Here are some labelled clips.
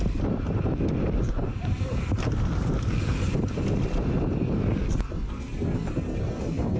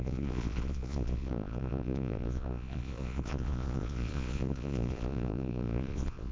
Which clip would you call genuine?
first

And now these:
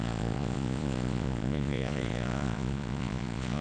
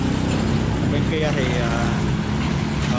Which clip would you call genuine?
second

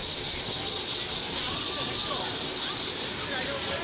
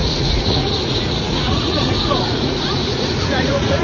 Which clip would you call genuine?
first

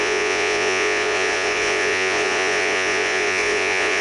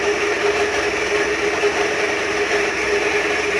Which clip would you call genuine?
second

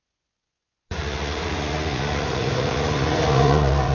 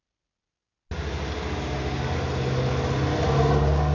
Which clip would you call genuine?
second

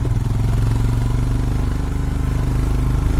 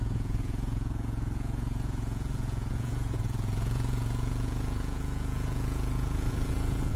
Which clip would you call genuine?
first